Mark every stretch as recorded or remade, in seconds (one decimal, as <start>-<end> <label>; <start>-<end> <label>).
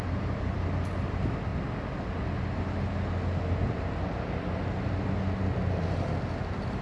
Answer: 0.0-6.8 recorded